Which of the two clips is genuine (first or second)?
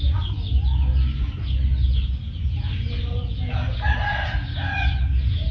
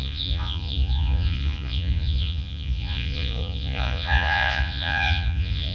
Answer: first